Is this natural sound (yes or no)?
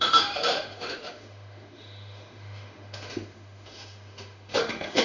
no